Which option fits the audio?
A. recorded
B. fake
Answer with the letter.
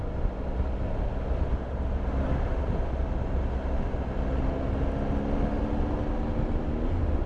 A